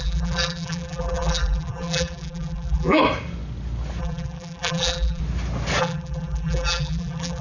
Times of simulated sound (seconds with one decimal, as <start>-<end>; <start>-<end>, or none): 0.0-3.0; 4.0-5.2; 5.8-7.4